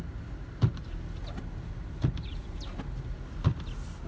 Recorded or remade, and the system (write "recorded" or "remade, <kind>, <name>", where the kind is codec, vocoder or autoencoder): recorded